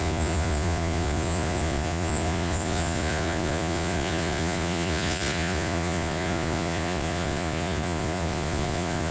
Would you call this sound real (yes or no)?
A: no